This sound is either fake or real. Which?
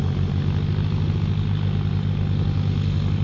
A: real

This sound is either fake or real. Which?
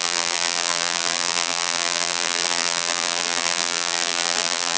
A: fake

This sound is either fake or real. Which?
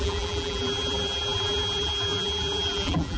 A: fake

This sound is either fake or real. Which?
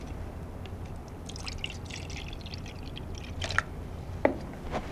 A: real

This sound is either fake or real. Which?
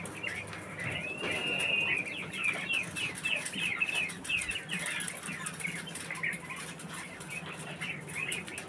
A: real